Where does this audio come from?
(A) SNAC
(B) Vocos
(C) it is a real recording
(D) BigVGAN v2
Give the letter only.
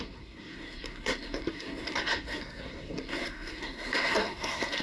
A